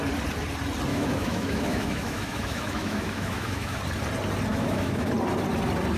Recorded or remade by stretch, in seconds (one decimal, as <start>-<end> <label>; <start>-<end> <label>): 0.0-0.9 recorded; 0.9-3.8 remade; 3.8-4.5 recorded; 4.5-5.1 remade; 5.1-6.0 recorded